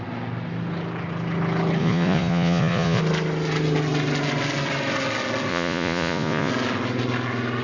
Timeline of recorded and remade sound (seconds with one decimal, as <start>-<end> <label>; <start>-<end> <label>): 0.0-1.8 recorded; 1.8-3.0 remade; 3.0-5.5 recorded; 5.5-6.5 remade; 6.5-7.6 recorded